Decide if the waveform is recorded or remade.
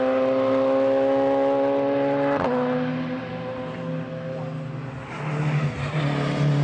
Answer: recorded